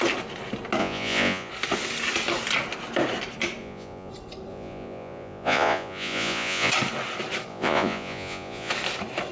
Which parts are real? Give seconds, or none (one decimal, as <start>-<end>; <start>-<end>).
0.0-0.8; 1.5-3.6; 4.1-4.5; 6.7-7.5; 8.7-9.3